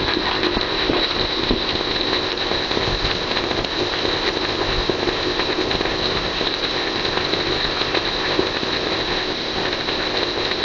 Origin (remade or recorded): remade